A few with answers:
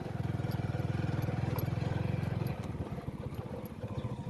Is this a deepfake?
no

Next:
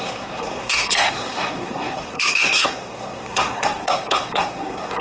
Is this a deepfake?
yes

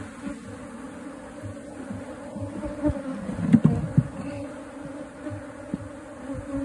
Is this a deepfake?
no